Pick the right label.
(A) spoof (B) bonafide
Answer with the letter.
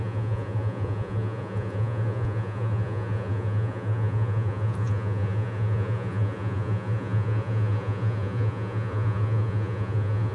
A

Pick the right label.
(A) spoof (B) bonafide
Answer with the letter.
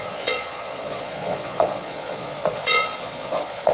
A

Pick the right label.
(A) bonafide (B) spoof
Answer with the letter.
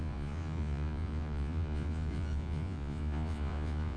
B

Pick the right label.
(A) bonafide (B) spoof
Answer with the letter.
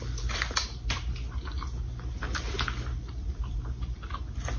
A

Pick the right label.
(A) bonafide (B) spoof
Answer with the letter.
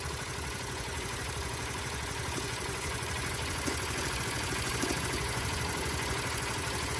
B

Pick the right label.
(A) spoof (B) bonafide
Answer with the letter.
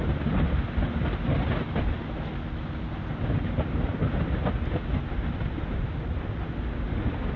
B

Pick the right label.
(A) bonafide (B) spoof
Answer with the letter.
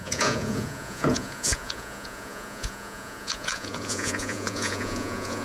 B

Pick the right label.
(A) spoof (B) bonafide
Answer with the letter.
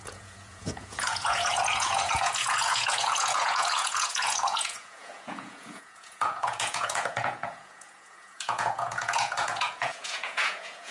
A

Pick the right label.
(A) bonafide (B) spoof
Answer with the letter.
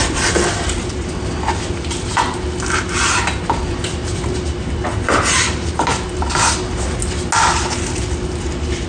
A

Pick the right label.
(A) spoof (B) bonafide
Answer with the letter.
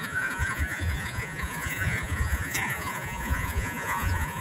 A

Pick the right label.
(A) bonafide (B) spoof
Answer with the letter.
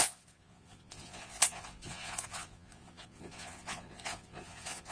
B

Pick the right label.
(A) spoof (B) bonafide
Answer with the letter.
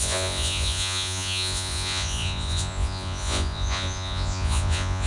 A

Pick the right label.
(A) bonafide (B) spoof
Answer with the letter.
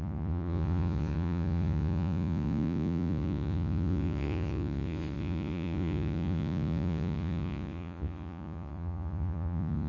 B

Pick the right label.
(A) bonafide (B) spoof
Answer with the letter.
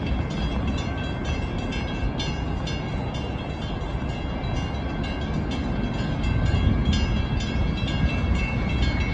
A